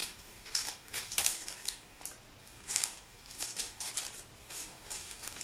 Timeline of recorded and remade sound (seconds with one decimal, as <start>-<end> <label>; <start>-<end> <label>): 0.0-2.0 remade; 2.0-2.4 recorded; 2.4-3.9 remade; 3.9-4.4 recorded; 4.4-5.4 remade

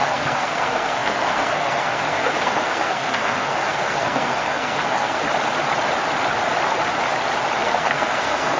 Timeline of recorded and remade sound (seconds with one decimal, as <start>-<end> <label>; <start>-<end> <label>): 0.0-5.2 remade; 5.2-7.6 recorded; 7.6-8.6 remade

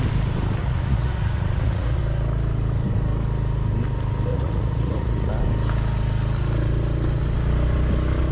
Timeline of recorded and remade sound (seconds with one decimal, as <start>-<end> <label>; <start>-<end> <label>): 0.0-0.6 recorded; 0.6-2.0 remade; 2.0-4.3 recorded; 4.3-5.3 remade; 5.3-8.3 recorded

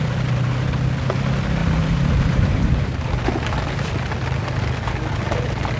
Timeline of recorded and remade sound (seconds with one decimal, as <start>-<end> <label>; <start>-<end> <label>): 0.0-1.6 recorded; 1.6-3.2 remade; 3.2-5.8 recorded